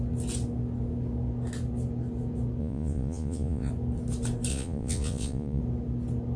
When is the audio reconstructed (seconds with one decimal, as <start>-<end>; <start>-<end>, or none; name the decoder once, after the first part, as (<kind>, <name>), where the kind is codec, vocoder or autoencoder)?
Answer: 2.6-3.7 (vocoder, Vocos); 4.5-5.6